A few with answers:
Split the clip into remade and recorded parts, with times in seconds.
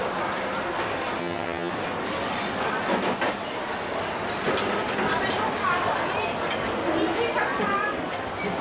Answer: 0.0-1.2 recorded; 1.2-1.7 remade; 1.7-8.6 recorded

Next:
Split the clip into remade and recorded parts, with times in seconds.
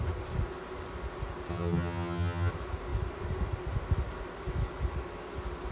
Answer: 0.0-1.5 recorded; 1.5-2.5 remade; 2.5-5.7 recorded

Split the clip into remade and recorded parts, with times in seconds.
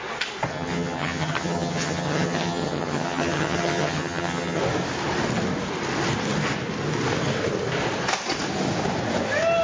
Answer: 0.0-0.5 recorded; 0.5-4.6 remade; 4.6-9.6 recorded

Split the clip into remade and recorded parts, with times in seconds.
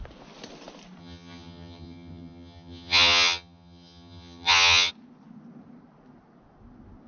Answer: 0.0-1.0 recorded; 1.0-4.9 remade; 4.9-7.1 recorded